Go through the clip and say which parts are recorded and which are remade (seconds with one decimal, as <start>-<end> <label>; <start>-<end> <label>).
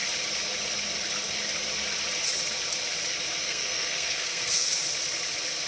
0.0-3.4 recorded; 3.4-4.7 remade; 4.7-5.7 recorded